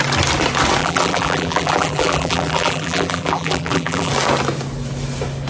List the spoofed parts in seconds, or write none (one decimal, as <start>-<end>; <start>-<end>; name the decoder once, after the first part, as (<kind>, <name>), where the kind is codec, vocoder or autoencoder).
0.8-4.1 (vocoder, BigVGAN v2)